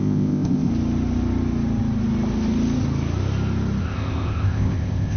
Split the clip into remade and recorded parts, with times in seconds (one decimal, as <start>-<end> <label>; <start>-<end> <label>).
0.0-0.7 remade; 0.7-3.8 recorded; 3.8-5.2 remade